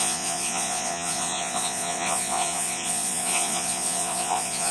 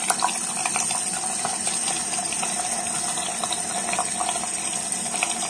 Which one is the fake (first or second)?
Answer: first